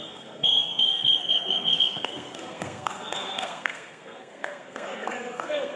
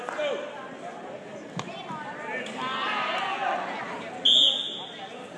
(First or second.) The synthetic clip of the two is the first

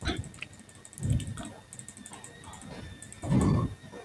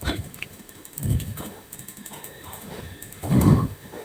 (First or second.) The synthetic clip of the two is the second